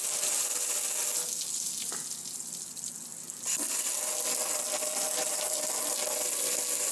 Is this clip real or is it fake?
real